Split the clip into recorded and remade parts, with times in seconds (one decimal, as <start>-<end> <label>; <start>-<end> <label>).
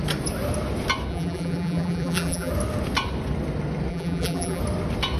0.0-1.1 recorded; 1.1-2.5 remade; 2.5-3.9 recorded; 3.9-4.6 remade; 4.6-5.2 recorded